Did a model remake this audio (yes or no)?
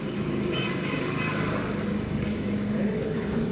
yes